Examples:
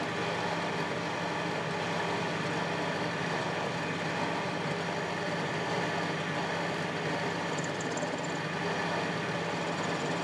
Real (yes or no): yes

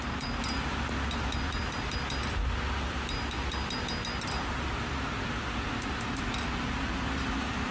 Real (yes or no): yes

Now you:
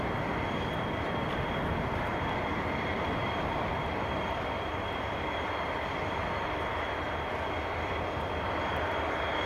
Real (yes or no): yes